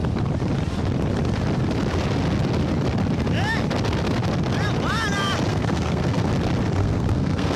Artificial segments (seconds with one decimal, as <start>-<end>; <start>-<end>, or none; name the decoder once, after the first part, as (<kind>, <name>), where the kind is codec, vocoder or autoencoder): 5.5-6.3 (codec, SNAC); 6.8-7.6